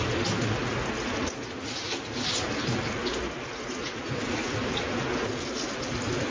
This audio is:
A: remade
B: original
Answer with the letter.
B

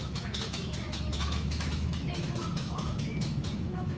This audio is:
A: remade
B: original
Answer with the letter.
A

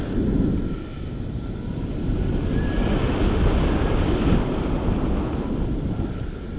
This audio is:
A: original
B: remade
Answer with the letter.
A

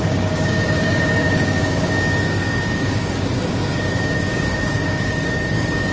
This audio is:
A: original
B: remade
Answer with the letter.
B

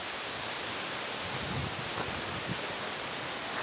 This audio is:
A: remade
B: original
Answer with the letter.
B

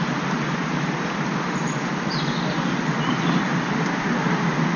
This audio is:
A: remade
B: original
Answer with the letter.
B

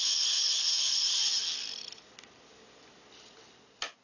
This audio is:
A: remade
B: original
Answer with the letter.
B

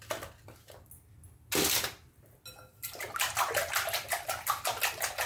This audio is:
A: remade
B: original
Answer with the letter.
B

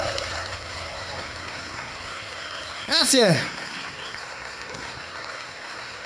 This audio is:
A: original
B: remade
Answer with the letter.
B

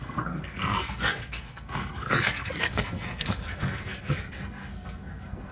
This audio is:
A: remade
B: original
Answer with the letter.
A